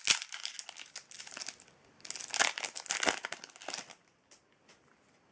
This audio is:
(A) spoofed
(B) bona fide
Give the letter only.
B